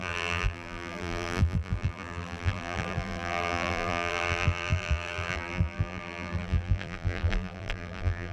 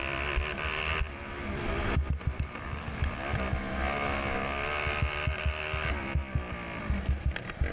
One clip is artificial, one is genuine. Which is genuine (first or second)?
second